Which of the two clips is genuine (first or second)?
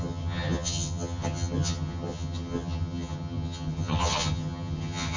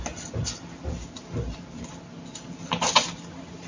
second